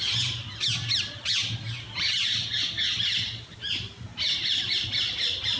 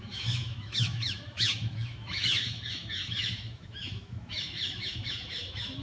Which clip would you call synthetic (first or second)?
second